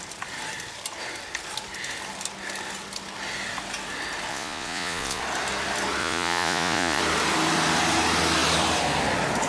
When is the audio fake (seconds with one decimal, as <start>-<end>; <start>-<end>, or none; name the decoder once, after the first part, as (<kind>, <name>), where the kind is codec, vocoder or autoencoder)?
4.3-5.2 (vocoder, Vocos); 6.0-7.0